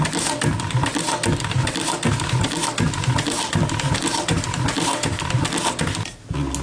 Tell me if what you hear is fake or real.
real